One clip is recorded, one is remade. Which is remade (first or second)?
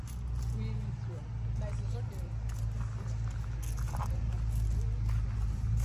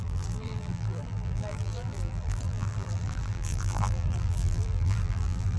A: second